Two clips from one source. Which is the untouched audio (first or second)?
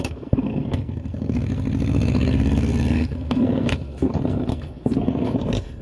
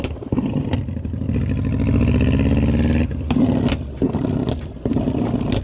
second